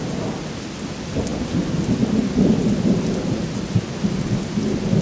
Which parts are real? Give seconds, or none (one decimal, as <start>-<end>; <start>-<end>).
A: 0.0-5.0